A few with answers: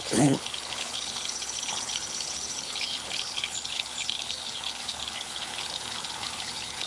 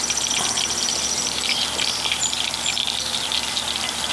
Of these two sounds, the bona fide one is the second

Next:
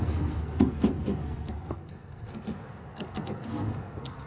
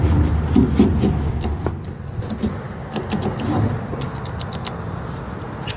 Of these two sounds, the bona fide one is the second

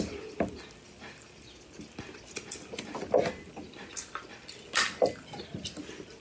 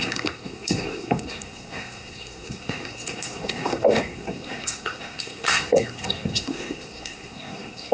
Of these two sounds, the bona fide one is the first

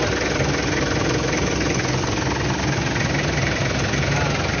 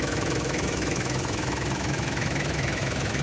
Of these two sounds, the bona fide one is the first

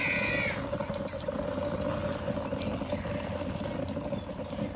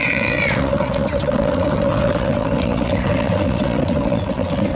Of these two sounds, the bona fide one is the first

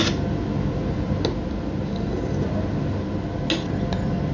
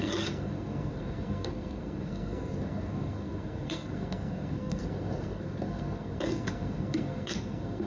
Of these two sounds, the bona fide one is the first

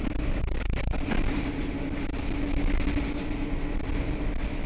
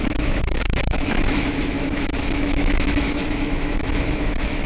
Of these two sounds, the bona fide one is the first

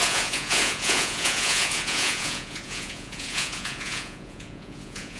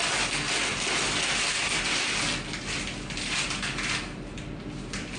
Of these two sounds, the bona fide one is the second